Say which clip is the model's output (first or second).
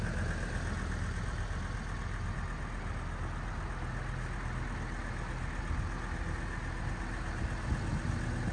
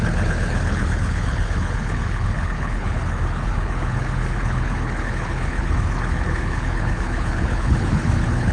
second